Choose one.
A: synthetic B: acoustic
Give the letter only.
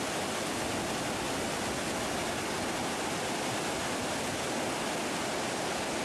B